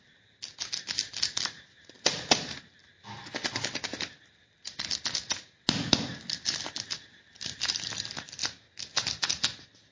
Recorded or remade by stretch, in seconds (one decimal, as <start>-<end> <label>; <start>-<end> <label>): 0.0-9.9 recorded